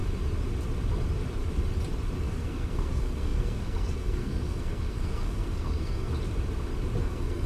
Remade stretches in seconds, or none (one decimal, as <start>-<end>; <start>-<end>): 2.2-6.1; 7.0-7.5